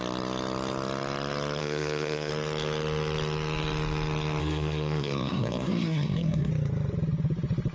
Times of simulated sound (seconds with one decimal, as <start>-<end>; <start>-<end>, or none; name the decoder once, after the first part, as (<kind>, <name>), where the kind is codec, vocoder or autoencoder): 1.6-2.3 (codec, SNAC); 4.4-6.5